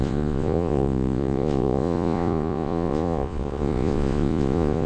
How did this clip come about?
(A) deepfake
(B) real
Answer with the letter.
A